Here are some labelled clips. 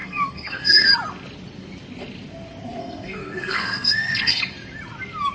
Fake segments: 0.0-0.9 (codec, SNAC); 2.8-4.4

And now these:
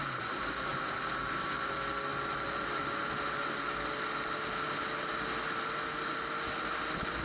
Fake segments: none

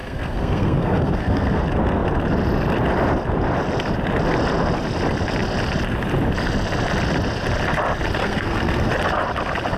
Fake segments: 0.0-1.6 (codec, SNAC); 8.2-8.9

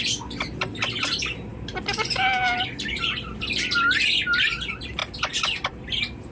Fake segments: none

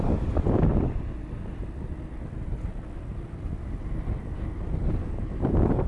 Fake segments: none

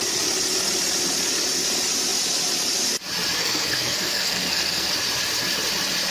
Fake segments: 3.4-4.9 (codec, SNAC)